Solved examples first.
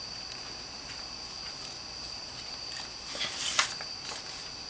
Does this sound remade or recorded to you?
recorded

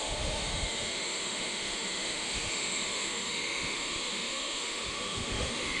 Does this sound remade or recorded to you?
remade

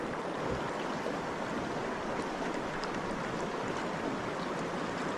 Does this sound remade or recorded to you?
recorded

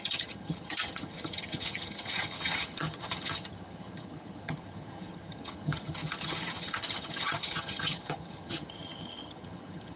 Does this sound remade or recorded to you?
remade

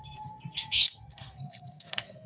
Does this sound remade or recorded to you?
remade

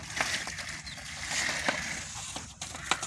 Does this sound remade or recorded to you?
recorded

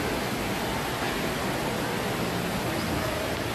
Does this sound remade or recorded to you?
recorded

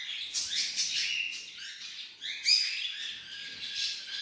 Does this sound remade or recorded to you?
recorded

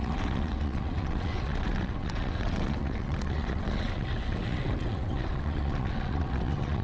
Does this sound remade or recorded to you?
remade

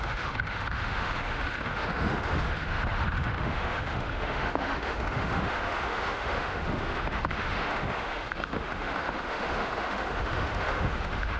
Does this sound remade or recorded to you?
remade